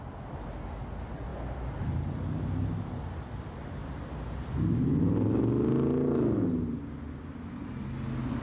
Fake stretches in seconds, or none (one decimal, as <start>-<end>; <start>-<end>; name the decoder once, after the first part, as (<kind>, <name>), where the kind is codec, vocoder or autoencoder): none